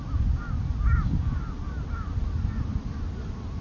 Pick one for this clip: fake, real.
real